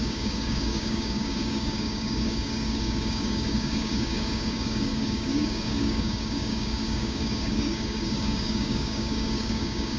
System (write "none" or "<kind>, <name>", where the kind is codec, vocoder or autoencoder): codec, DAC